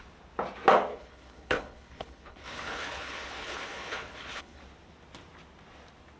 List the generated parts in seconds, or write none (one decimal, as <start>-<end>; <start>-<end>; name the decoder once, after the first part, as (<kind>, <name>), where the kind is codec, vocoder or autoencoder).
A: 0.9-4.6 (codec, HILCodec)